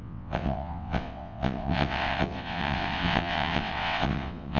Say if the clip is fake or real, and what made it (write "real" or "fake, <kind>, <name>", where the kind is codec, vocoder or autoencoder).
fake, vocoder, WaveNeXt